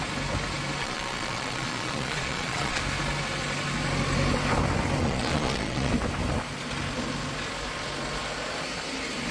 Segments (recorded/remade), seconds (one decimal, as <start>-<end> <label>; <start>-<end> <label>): 0.0-0.8 recorded; 0.8-2.8 remade; 2.8-5.0 recorded; 5.0-5.9 remade; 5.9-9.3 recorded